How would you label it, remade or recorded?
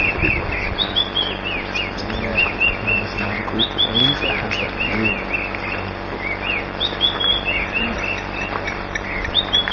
recorded